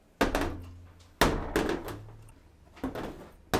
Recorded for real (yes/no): yes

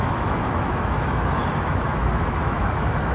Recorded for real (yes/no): no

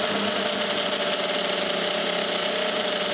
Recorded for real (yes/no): yes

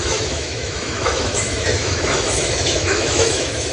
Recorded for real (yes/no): no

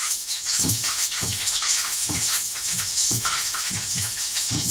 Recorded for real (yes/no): no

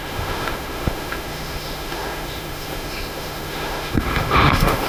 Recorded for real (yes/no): no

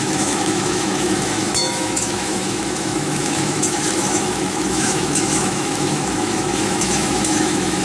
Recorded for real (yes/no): no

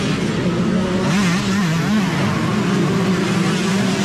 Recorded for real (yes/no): yes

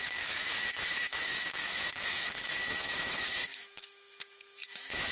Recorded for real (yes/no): no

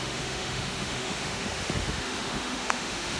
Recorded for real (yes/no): no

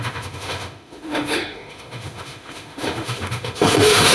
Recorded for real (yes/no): no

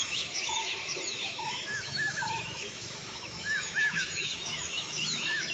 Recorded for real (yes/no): no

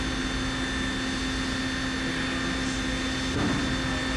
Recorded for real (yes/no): yes